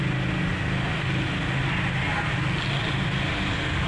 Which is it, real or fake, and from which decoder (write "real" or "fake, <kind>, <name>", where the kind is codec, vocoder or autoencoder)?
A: real